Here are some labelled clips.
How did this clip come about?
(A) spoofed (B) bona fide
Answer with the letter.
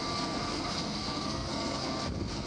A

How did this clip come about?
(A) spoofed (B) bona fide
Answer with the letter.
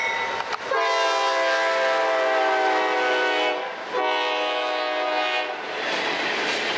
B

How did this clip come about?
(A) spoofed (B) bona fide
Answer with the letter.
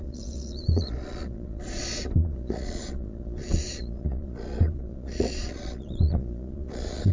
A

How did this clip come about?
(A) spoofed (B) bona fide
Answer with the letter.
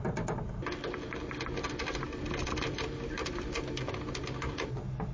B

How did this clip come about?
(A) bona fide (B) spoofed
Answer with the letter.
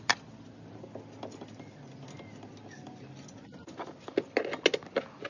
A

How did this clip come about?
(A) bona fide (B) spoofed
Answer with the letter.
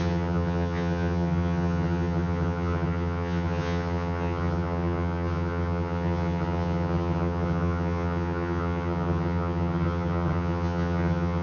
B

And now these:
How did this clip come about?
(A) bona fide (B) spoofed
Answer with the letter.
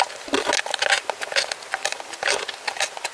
A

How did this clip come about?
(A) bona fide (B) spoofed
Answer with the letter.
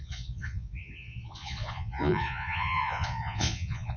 B